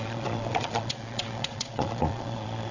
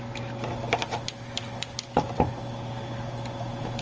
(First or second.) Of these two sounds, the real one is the second